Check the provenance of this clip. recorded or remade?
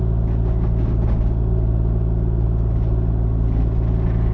recorded